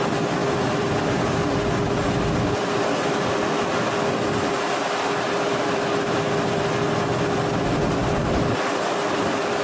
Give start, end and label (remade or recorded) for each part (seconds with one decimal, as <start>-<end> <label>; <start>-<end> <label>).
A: 0.0-0.4 recorded; 0.4-1.4 remade; 1.4-9.6 recorded